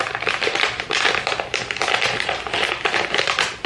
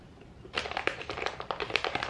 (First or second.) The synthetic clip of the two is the second